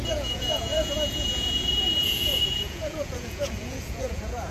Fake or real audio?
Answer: fake